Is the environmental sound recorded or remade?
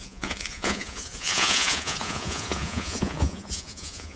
remade